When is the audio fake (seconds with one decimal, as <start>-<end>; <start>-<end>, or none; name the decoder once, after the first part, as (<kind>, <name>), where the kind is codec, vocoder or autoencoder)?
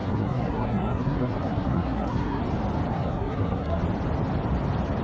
0.0-2.4 (codec, SNAC); 2.9-3.8